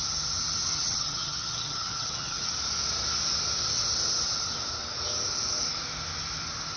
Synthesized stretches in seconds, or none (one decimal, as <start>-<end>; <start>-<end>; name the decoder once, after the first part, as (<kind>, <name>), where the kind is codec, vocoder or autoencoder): 0.7-2.5 (vocoder, HiFi-GAN)